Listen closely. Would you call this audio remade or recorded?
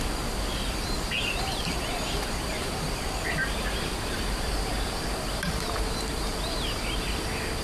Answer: remade